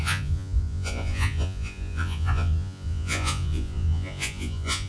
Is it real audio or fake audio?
fake